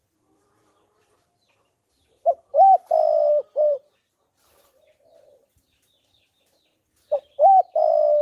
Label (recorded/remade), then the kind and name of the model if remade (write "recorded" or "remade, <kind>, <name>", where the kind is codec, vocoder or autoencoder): remade, vocoder, BigVGAN v2